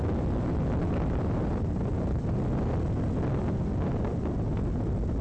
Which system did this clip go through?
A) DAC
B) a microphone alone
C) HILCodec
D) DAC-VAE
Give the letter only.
B